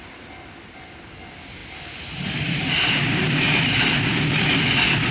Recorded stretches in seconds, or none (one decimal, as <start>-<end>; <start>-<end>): 0.0-5.1